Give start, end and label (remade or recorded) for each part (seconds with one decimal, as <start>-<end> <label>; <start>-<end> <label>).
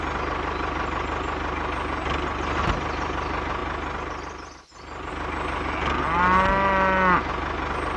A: 0.0-8.0 recorded